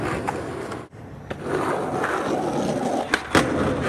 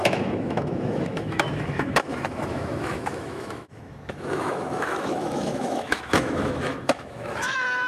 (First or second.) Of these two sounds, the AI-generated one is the second